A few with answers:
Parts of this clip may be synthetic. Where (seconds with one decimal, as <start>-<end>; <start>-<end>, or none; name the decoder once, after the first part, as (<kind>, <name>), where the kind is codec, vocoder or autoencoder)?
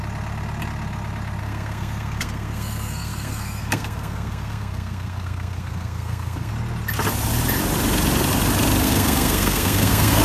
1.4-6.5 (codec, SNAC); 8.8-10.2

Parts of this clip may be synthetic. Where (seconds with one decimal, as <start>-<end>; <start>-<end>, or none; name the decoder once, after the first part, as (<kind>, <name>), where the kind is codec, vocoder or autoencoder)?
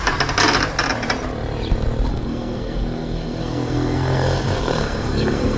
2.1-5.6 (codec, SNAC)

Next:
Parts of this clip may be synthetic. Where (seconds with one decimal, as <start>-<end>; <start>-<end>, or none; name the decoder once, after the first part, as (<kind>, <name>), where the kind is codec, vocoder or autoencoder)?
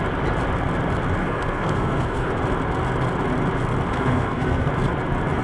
1.2-2.3 (codec, SNAC); 3.9-4.7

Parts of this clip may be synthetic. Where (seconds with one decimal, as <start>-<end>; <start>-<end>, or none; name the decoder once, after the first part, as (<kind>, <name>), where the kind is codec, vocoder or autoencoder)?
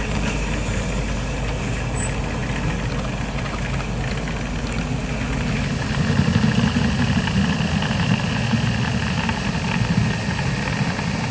none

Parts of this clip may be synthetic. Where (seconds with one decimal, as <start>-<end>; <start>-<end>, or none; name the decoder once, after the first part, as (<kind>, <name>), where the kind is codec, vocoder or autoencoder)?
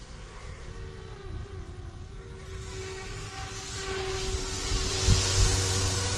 0.0-0.7 (codec, SNAC)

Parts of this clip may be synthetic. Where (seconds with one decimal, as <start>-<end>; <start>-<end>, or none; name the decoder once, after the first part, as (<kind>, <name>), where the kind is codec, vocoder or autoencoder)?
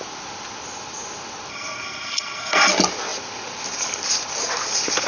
1.5-2.7 (codec, SNAC)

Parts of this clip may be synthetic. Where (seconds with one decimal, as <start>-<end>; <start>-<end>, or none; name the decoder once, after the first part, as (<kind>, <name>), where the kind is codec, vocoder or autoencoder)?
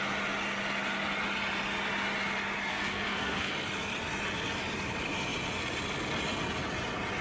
2.7-3.5 (codec, SNAC)